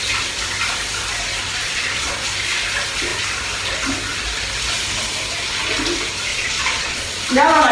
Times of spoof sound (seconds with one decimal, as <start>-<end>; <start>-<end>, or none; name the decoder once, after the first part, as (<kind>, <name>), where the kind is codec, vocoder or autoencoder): 1.6-2.1 (vocoder, Vocos); 6.3-7.3